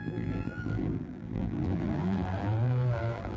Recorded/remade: remade